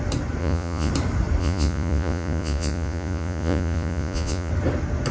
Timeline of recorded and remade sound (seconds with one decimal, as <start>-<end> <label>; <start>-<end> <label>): 0.0-0.4 recorded; 0.4-0.9 remade; 0.9-1.4 recorded; 1.4-4.5 remade; 4.5-5.1 recorded